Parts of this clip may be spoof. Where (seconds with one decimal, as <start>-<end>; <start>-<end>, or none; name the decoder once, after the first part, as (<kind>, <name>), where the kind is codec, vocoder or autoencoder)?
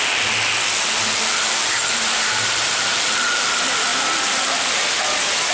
1.6-3.0 (vocoder, BigVGAN v2); 3.9-5.5